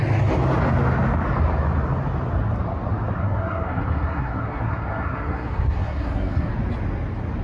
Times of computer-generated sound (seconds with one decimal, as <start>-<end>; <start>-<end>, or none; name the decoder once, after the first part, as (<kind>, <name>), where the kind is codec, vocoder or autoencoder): 3.2-6.5 (codec, SNAC)